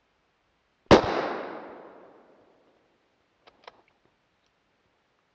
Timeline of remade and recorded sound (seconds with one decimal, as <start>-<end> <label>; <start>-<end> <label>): 0.0-5.3 recorded